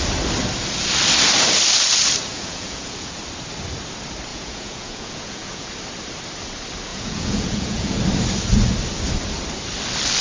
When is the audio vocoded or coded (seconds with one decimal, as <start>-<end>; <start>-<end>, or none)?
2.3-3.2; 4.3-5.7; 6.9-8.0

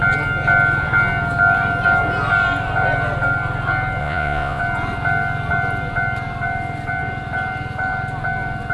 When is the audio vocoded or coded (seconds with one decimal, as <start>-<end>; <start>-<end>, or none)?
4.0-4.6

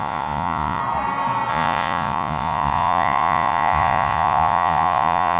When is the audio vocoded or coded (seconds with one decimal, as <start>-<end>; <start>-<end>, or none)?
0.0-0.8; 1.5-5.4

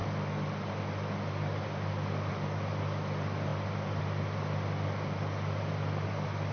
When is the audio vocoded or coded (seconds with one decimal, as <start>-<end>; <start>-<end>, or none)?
none

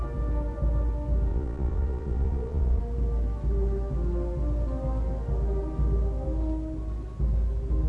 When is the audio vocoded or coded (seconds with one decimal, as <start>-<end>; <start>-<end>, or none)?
1.3-2.8

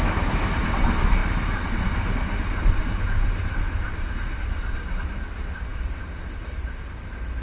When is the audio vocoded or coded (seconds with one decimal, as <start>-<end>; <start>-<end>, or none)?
none

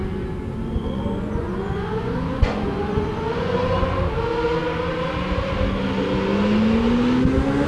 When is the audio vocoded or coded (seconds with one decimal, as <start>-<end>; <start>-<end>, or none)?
0.8-4.0